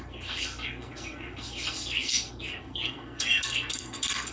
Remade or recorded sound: remade